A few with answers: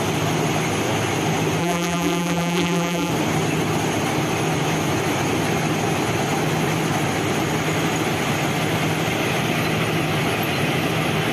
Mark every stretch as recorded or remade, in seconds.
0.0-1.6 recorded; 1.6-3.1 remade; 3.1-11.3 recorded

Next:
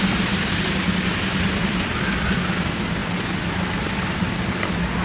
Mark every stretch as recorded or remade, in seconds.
0.0-5.0 recorded

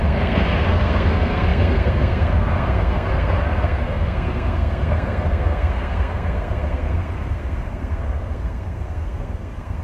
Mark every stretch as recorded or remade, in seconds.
0.0-9.8 remade